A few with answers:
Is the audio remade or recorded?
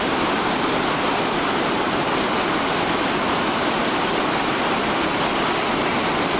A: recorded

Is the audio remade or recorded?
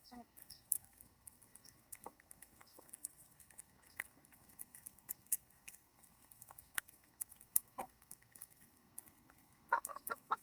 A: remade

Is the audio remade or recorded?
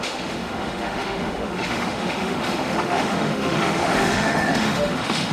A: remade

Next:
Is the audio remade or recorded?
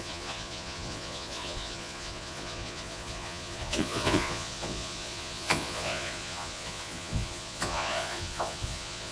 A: remade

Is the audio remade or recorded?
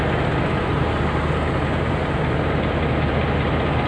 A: recorded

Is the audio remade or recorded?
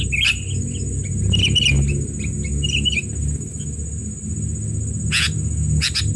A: recorded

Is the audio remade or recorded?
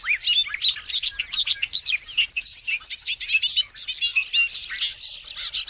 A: recorded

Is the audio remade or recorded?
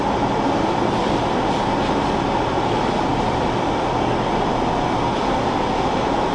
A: recorded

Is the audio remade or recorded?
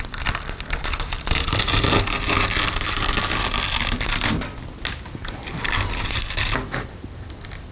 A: recorded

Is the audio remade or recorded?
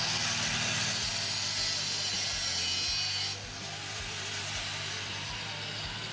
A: recorded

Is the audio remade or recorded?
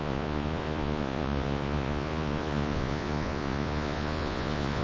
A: remade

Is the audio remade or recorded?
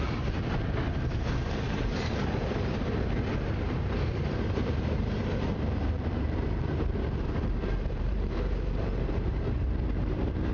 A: remade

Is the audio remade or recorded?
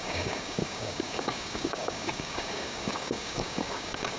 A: remade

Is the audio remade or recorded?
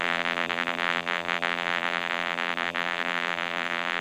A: remade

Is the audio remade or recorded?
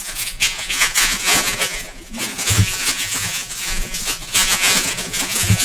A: remade